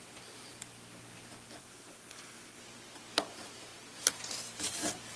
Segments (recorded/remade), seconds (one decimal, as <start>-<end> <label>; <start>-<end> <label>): 0.0-1.6 recorded; 1.6-2.6 remade; 2.6-5.2 recorded